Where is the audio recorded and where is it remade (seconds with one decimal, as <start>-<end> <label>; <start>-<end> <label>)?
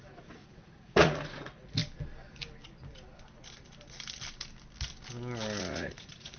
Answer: 0.0-1.8 remade; 1.8-5.6 recorded; 5.6-6.4 remade